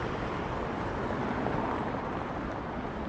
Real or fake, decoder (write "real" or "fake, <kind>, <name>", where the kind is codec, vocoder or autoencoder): real